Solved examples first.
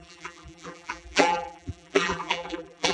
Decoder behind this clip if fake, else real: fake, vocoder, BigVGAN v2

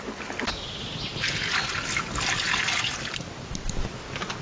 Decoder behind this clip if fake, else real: real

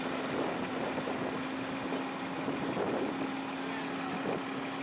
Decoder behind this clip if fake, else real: real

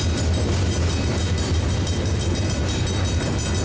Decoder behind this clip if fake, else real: real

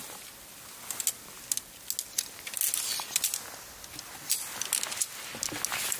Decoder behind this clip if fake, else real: real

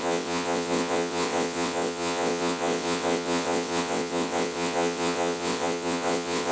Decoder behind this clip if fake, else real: fake, vocoder, WaveNeXt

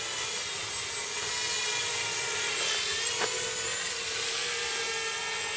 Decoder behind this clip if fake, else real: real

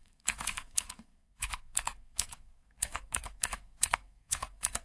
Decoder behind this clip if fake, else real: fake, codec, SNAC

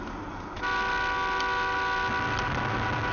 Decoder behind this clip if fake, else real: real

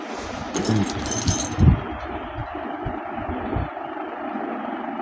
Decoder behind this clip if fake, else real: real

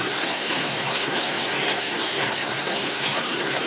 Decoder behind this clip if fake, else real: fake, codec, SNAC